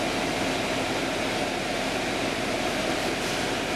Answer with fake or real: real